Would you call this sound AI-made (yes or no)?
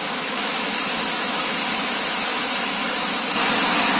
yes